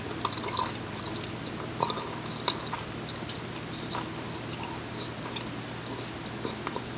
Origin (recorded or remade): recorded